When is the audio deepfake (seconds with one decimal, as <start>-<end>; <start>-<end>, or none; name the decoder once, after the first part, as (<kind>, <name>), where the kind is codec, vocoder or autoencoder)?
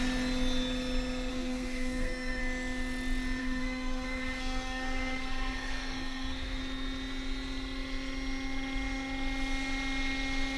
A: 1.3-2.4 (codec, SNAC); 3.4-6.6